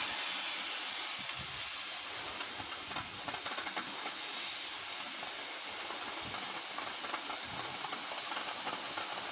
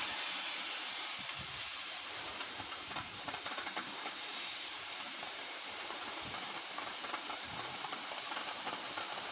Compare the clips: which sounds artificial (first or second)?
second